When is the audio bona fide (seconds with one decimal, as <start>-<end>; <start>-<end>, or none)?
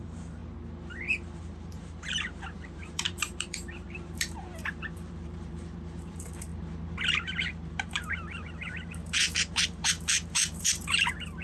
0.4-1.4; 6.5-7.1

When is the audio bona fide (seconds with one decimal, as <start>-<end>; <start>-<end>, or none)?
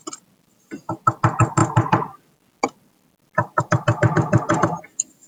0.0-5.3